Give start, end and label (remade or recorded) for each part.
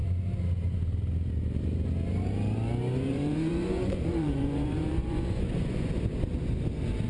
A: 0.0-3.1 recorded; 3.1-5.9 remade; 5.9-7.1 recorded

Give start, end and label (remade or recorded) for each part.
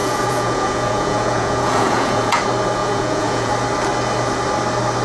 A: 0.0-2.4 remade; 2.4-2.8 recorded; 2.8-3.5 remade; 3.5-5.0 recorded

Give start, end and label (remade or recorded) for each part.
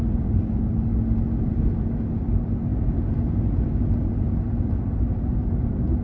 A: 0.0-0.9 remade; 0.9-1.4 recorded; 1.4-6.0 remade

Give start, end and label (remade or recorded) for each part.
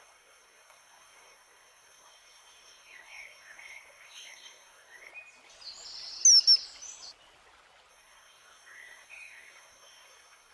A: 0.0-5.1 remade; 5.1-7.9 recorded; 7.9-10.5 remade